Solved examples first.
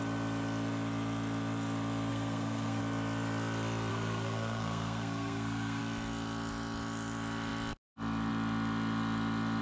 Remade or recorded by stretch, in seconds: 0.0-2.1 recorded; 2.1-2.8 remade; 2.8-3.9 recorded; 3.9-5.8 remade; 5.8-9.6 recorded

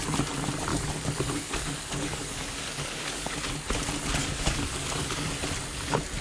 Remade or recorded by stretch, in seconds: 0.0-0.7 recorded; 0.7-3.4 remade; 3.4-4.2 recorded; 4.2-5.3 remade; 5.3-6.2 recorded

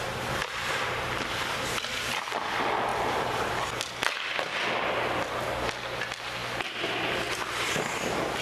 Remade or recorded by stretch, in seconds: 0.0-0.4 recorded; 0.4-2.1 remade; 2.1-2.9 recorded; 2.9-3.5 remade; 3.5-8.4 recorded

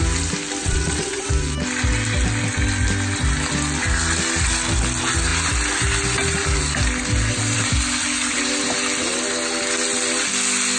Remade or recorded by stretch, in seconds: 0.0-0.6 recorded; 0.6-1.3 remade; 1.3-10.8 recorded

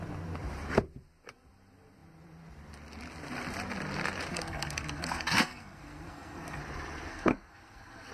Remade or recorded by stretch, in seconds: 0.0-4.3 recorded; 4.3-6.6 remade; 6.6-7.1 recorded; 7.1-8.1 remade

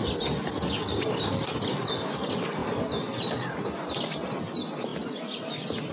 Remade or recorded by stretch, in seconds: 0.0-4.9 recorded; 4.9-5.9 remade